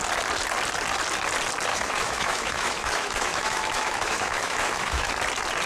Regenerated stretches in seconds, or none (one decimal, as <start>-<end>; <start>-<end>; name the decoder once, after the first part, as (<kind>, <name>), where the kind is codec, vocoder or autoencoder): 1.7-5.1 (autoencoder, DAC-VAE)